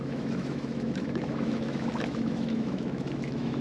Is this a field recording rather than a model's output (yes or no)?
no